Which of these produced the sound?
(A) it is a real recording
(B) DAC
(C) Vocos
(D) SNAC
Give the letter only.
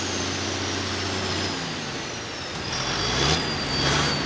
A